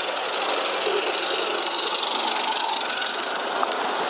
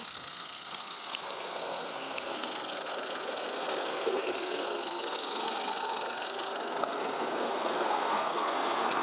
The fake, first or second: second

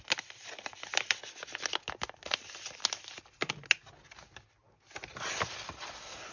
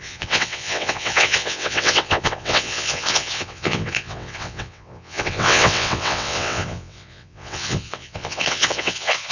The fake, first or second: second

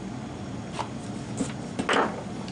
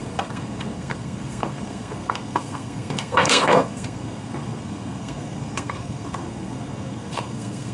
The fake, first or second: second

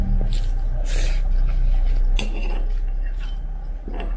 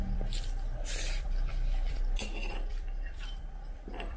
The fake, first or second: second